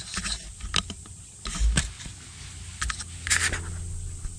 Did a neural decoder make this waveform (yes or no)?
no